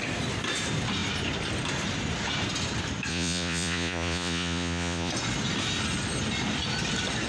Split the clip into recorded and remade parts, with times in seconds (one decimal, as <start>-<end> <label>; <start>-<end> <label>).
0.0-3.1 recorded; 3.1-5.1 remade; 5.1-7.3 recorded